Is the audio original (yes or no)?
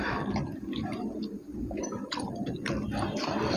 no